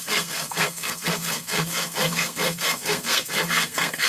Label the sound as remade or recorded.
remade